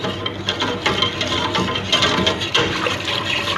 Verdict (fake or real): real